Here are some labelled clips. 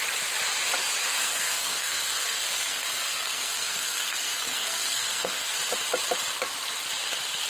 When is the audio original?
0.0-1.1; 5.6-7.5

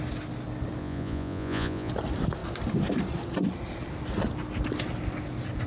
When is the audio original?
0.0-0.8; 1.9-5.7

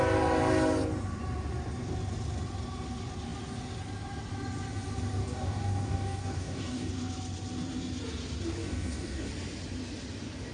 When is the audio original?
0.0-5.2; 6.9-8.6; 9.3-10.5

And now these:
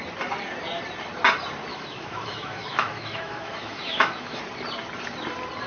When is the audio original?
0.0-1.7; 4.4-5.7

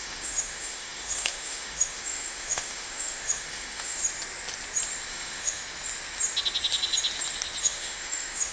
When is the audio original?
4.0-5.1; 5.6-7.6